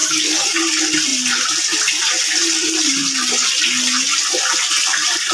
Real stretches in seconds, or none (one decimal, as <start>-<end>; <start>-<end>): 0.6-5.3